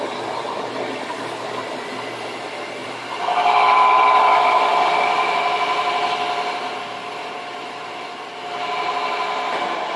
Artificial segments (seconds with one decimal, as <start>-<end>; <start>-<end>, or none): 0.0-7.0; 7.9-10.0